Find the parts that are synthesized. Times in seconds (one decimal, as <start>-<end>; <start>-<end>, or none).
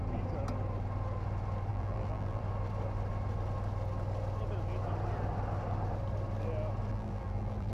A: 1.7-2.4; 6.9-7.7